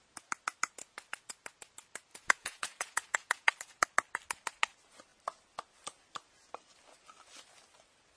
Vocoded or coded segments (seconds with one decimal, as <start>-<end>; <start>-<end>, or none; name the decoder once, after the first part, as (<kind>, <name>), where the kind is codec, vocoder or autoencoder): 2.1-3.5 (vocoder, Vocos)